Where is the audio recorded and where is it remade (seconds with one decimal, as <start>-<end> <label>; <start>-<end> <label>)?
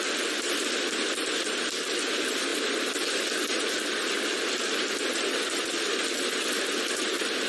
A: 0.0-7.5 recorded